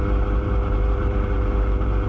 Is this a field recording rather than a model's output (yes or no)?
yes